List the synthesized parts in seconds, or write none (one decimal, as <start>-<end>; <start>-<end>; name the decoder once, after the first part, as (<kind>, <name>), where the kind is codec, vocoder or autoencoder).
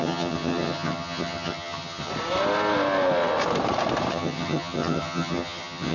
0.0-2.1 (vocoder, HiFi-GAN); 4.1-5.9